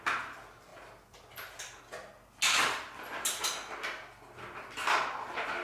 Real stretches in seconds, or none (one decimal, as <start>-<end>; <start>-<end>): 0.0-5.6